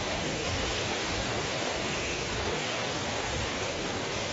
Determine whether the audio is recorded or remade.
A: remade